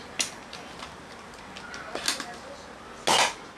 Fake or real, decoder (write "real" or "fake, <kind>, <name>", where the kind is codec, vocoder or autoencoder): real